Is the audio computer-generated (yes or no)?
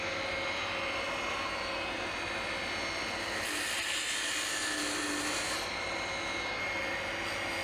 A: no